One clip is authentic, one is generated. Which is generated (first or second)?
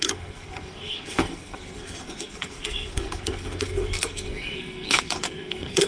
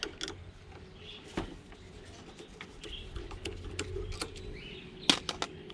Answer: first